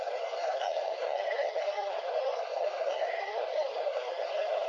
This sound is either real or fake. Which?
fake